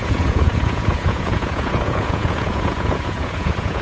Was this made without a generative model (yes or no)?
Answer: no